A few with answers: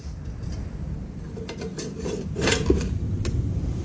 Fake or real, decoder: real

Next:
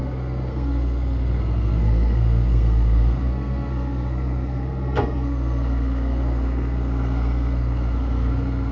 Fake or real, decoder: fake, codec, SNAC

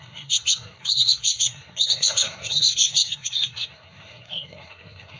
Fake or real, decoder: fake, codec, SNAC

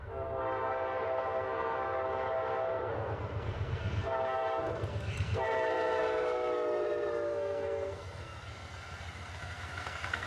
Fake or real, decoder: fake, codec, SNAC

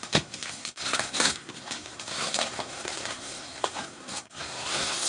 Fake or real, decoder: fake, codec, SNAC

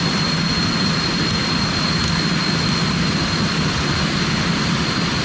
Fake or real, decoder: real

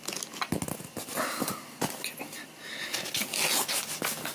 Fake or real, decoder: real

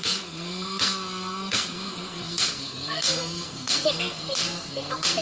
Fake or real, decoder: fake, codec, SNAC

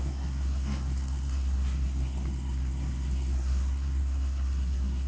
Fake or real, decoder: fake, codec, SNAC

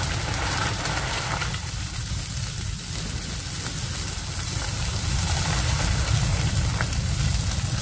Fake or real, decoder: real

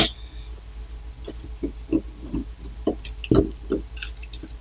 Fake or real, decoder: real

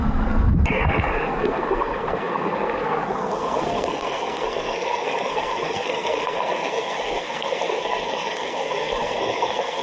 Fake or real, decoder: fake, codec, SNAC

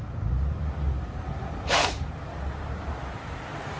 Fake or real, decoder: real